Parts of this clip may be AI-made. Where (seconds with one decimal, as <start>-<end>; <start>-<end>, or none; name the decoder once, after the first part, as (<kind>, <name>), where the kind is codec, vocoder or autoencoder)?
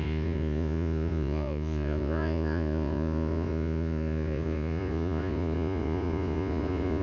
0.0-7.0 (vocoder, Vocos)